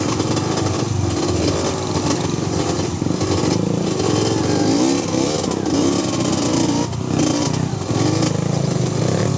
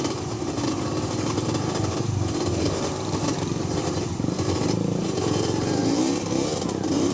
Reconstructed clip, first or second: second